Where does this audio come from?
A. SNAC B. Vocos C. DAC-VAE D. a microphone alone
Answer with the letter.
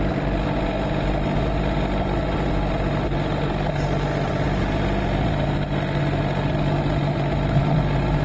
D